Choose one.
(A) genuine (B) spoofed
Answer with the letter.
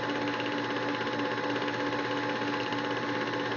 A